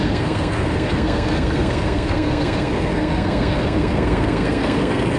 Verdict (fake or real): fake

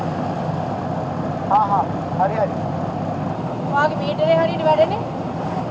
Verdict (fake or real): real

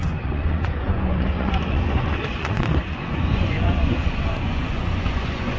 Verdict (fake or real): fake